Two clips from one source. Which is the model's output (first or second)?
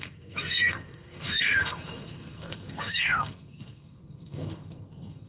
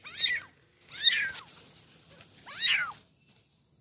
first